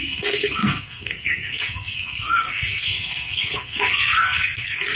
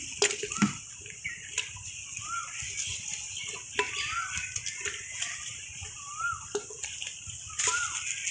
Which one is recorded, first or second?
second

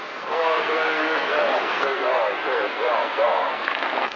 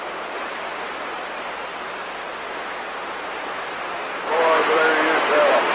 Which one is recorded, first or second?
second